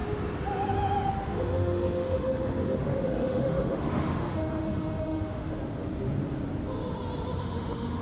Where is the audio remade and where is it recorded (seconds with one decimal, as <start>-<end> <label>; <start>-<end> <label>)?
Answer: 0.0-1.1 recorded; 1.1-5.6 remade; 5.6-7.4 recorded; 7.4-8.0 remade